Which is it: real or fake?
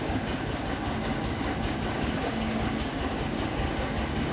fake